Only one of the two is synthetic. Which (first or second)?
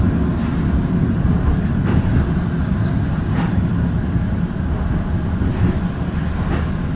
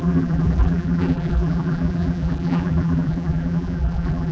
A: second